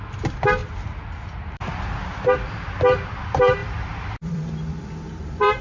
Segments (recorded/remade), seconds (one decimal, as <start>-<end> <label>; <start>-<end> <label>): 0.0-0.6 remade; 0.6-3.2 recorded; 3.2-5.6 remade